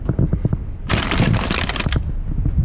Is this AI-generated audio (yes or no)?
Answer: no